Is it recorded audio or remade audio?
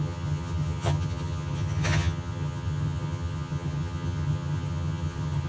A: remade